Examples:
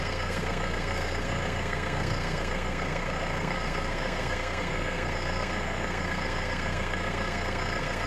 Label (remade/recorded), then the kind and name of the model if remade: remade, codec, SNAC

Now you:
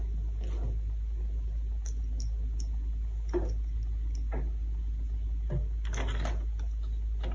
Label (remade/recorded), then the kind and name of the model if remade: recorded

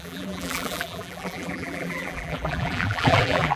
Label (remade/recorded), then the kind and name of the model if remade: remade, vocoder, BigVGAN v2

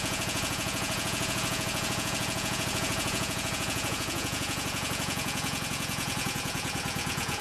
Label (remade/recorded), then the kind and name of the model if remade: remade, vocoder, Vocos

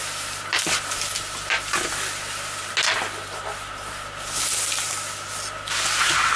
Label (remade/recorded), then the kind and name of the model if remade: recorded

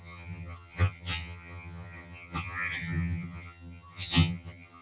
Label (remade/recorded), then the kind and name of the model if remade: remade, vocoder, HiFi-GAN